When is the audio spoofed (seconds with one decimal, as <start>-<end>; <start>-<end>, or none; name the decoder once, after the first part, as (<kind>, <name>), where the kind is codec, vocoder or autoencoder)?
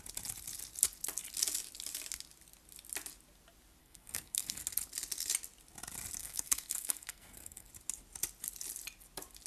3.8-4.6 (codec, SNAC); 6.2-7.7